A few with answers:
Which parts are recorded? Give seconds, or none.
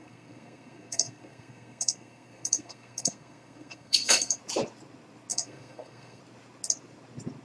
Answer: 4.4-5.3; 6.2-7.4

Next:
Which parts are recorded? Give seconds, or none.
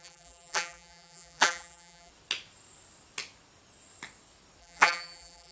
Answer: 2.1-4.6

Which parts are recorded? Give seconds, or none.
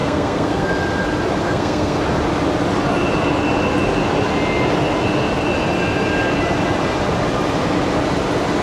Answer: 0.7-1.4; 2.0-8.6